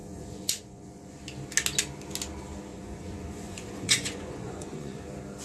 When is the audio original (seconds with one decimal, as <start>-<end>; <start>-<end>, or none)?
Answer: 1.2-2.7; 5.0-5.4